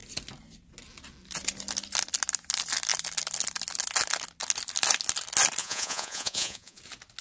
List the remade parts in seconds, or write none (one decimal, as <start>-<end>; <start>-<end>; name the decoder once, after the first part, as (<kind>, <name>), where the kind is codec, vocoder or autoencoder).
5.6-6.8 (vocoder, Vocos)